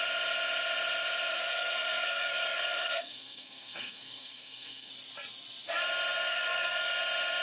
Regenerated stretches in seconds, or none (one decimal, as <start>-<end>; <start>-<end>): 1.3-4.9; 6.3-7.0